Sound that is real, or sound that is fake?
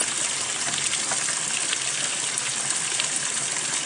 real